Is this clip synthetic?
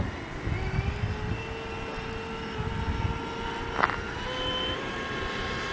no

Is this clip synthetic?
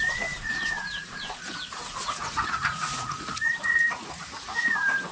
yes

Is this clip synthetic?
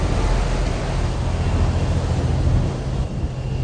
no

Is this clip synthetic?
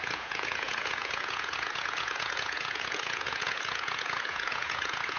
yes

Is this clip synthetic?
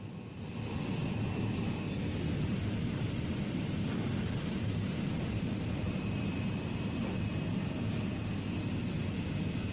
no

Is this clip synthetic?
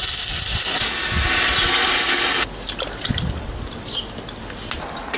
no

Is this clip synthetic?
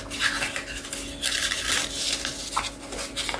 no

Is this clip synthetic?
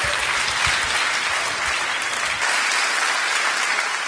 no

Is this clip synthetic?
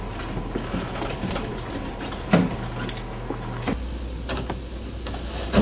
no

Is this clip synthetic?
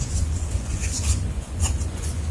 yes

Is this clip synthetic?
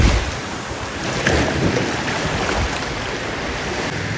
no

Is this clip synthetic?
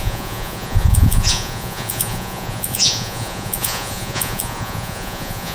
yes